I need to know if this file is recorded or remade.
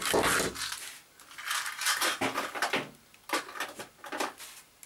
recorded